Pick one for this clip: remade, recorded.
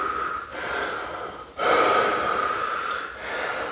recorded